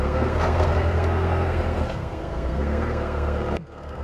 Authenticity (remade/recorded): remade